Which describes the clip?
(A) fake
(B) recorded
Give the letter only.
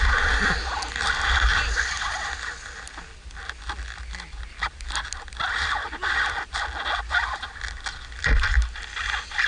B